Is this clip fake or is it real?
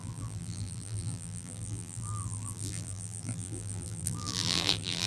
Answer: fake